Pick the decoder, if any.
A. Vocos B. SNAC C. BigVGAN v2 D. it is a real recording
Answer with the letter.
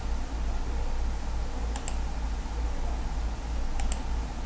D